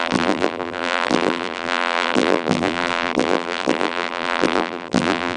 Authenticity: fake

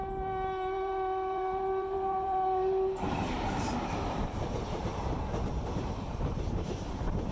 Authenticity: fake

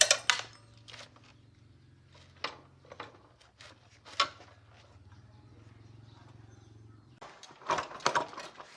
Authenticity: real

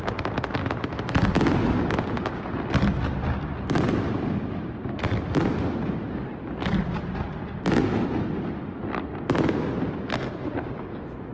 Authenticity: real